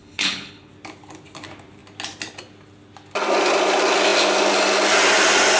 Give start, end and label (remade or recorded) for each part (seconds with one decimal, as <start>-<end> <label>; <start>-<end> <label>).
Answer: 0.0-0.7 remade; 0.7-5.6 recorded